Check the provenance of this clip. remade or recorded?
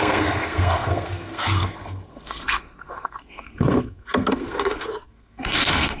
remade